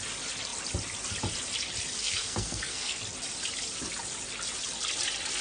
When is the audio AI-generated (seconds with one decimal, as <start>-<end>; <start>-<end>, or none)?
2.0-3.0